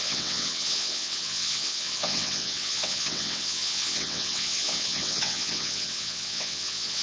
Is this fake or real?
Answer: fake